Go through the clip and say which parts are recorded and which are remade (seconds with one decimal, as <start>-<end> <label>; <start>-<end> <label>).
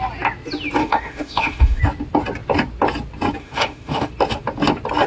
0.0-0.8 recorded; 0.8-1.8 remade; 1.8-3.4 recorded; 3.4-4.1 remade; 4.1-5.1 recorded